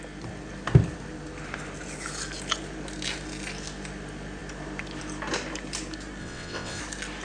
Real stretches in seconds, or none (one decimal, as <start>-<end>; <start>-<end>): 0.0-6.2; 6.8-7.2